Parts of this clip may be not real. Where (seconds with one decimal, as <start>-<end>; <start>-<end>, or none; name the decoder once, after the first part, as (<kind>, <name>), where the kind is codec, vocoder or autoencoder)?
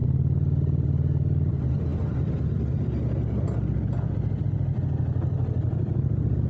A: none